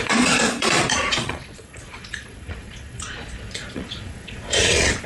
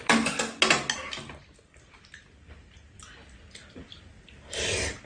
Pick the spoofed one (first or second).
first